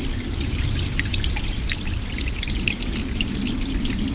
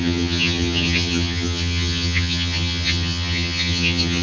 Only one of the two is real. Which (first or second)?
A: first